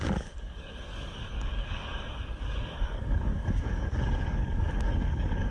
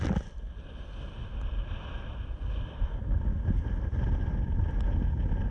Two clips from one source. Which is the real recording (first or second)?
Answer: second